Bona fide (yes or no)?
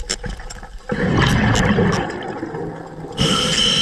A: yes